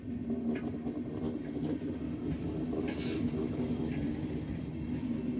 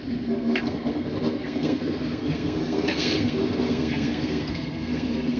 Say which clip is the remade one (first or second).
second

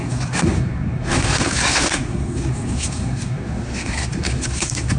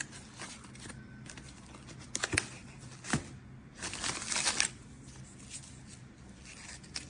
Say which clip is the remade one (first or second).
first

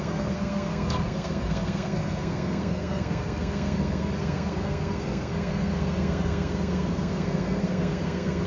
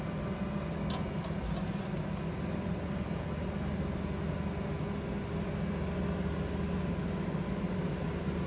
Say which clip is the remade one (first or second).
first